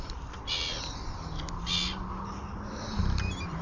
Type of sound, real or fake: real